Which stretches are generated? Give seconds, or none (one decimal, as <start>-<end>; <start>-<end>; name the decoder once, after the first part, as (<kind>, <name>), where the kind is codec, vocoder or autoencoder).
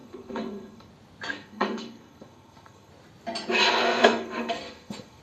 0.0-0.9 (codec, SNAC); 1.3-2.9; 3.7-5.2